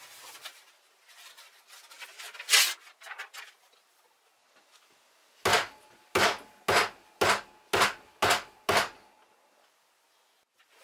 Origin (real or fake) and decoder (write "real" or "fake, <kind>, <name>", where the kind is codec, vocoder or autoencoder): real